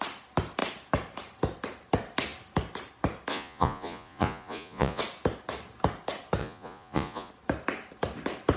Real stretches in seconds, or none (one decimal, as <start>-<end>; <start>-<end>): 0.0-3.3; 5.0-6.4; 7.3-8.6

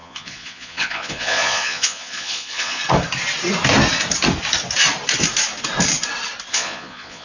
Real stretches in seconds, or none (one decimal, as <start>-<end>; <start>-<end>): 2.8-6.5

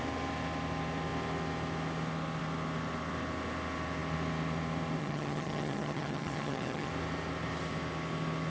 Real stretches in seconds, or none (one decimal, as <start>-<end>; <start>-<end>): 0.0-5.0; 6.9-8.5

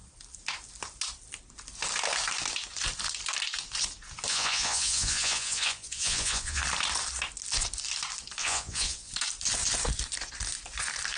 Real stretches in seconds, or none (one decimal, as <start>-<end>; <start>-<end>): 0.0-4.3; 6.6-8.4; 9.1-11.2

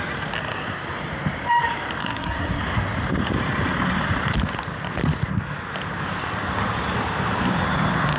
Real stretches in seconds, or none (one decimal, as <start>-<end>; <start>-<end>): 0.0-2.0; 2.6-8.2